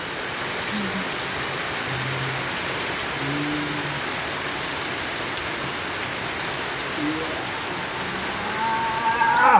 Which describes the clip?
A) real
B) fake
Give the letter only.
A